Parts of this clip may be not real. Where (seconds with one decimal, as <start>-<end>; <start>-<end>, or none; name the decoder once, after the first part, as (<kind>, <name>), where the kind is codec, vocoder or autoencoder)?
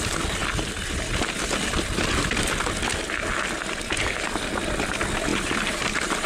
5.3-6.3 (vocoder, BigVGAN v2)